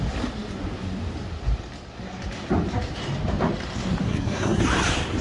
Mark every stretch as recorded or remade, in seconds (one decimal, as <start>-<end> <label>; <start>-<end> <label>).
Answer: 0.0-4.0 recorded; 4.0-4.6 remade; 4.6-5.2 recorded